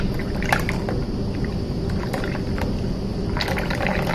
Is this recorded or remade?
recorded